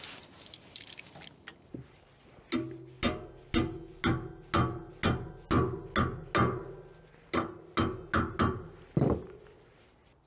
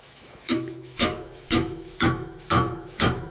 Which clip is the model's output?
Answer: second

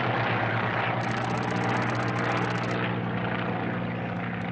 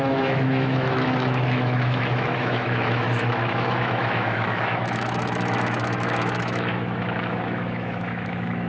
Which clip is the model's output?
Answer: second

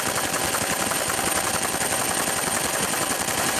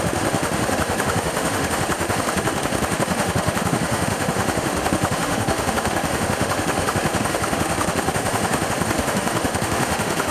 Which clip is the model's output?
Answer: second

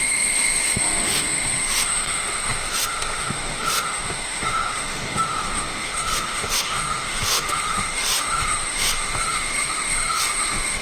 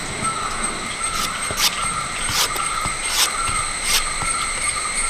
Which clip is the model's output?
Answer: first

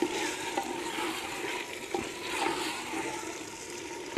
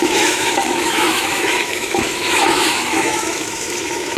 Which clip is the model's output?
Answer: second